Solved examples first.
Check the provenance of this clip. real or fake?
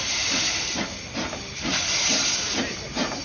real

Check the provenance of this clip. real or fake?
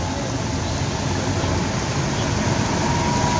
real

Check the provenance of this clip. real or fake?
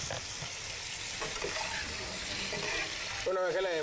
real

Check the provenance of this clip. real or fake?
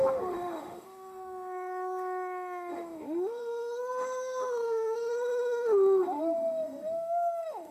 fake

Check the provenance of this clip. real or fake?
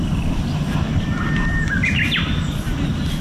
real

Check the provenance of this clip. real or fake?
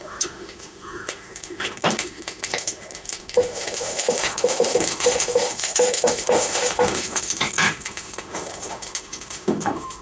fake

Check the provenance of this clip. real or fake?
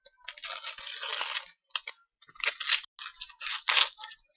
real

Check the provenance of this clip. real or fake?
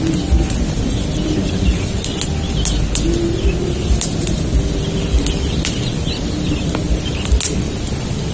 real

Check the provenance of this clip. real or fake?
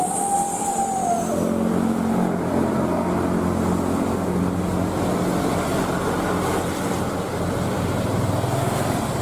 real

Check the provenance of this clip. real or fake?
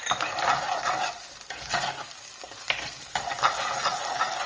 real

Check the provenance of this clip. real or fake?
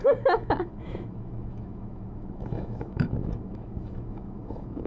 fake